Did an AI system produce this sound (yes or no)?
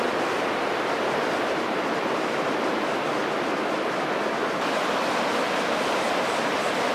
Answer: no